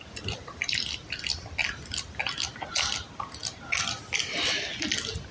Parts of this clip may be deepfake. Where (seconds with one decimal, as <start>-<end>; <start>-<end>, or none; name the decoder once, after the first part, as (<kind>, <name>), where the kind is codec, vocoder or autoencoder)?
none